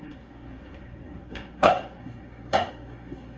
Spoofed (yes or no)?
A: yes